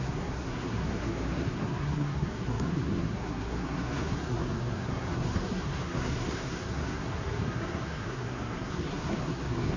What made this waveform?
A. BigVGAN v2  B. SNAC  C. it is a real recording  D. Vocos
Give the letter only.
B